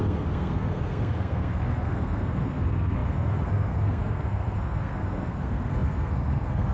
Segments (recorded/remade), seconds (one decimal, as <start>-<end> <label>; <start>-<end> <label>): 0.0-6.7 remade